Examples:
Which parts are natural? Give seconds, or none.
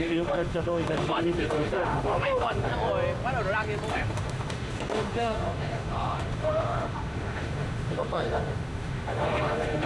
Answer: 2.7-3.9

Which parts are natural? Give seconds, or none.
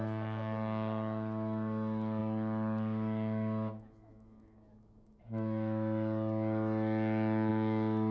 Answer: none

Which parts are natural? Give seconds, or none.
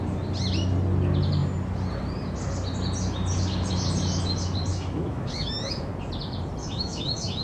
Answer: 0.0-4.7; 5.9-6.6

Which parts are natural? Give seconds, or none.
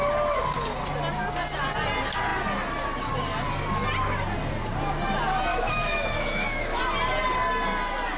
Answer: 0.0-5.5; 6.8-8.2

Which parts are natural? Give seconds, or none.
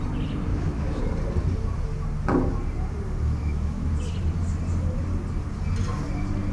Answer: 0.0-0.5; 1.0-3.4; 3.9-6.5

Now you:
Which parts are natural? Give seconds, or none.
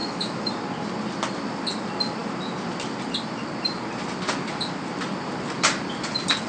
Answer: 0.5-6.5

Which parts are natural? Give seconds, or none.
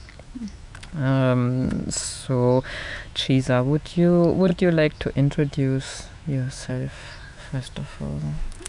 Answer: none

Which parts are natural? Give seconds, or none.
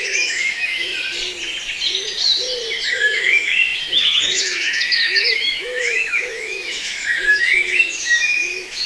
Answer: 0.9-2.9